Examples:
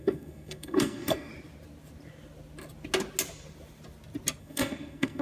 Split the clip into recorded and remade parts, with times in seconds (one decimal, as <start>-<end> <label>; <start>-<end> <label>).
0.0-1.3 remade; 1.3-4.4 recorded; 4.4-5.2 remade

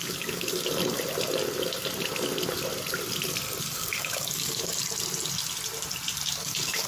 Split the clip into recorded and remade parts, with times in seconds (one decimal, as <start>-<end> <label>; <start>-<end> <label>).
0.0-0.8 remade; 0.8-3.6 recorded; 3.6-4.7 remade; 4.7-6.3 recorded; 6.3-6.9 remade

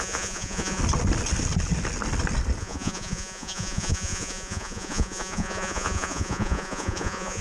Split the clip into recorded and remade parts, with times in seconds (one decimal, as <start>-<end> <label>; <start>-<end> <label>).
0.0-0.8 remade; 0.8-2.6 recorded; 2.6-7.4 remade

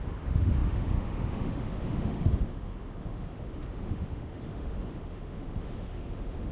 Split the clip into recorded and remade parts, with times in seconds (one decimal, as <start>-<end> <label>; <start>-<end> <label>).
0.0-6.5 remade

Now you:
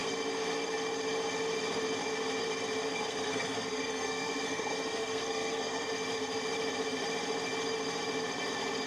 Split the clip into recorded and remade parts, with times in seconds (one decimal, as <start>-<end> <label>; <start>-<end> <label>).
0.0-2.8 recorded; 2.8-5.9 remade; 5.9-8.9 recorded